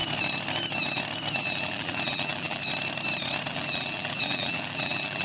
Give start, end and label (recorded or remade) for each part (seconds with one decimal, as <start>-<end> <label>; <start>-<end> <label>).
0.0-1.3 recorded; 1.3-2.6 remade; 2.6-3.5 recorded; 3.5-5.2 remade